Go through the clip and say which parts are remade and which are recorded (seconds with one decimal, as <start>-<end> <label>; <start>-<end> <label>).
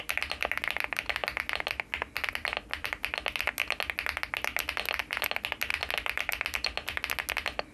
0.0-7.7 recorded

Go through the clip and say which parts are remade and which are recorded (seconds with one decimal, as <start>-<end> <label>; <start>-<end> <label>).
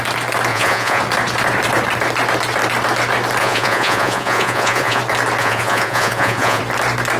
0.0-0.5 recorded; 0.5-1.0 remade; 1.0-3.4 recorded; 3.4-5.0 remade; 5.0-5.4 recorded; 5.4-6.6 remade; 6.6-7.2 recorded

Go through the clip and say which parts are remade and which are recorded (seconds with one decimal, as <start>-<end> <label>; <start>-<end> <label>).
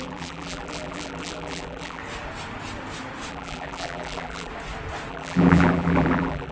0.0-2.0 remade; 2.0-3.3 recorded; 3.3-4.5 remade; 4.5-5.1 recorded; 5.1-6.5 remade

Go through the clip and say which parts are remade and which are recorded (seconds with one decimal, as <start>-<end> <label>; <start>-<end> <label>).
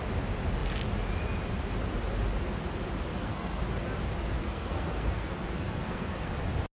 0.0-3.1 recorded; 3.1-3.6 remade; 3.6-4.2 recorded; 4.2-6.3 remade; 6.3-6.7 recorded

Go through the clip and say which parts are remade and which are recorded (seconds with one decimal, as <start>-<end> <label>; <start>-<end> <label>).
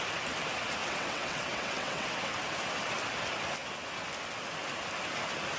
0.0-0.8 recorded; 0.8-2.1 remade; 2.1-5.6 recorded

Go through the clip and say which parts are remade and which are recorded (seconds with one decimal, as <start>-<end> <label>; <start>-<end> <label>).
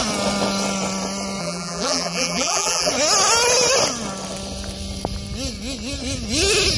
0.0-1.4 recorded; 1.4-2.9 remade; 2.9-6.8 recorded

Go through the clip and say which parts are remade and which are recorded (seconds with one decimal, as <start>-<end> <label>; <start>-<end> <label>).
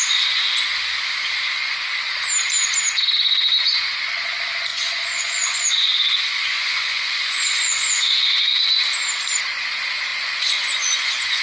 0.0-4.7 recorded; 4.7-5.7 remade; 5.7-6.5 recorded; 6.5-8.7 remade; 8.7-10.1 recorded; 10.1-11.4 remade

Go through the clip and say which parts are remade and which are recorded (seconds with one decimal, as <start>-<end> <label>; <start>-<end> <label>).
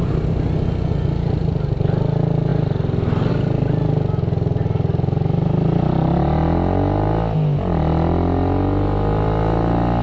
0.0-10.0 recorded